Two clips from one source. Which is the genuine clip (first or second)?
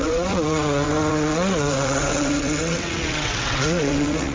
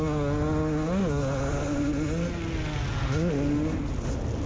second